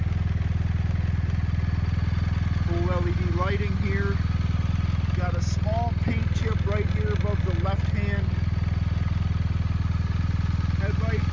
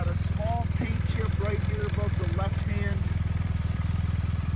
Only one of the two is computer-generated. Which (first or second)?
second